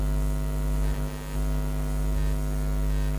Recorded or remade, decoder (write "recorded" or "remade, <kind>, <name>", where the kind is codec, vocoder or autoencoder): recorded